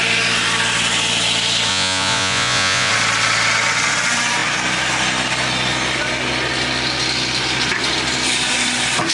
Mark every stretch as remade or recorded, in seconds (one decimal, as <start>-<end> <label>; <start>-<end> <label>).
0.0-1.7 recorded; 1.7-2.9 remade; 2.9-9.1 recorded